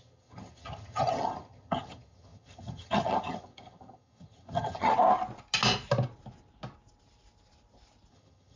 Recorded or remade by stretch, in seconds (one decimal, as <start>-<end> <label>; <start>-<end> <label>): 0.0-4.9 remade; 4.9-8.1 recorded; 8.1-8.6 remade